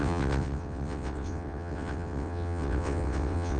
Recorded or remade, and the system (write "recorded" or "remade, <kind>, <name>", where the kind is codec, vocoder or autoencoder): remade, vocoder, WaveNeXt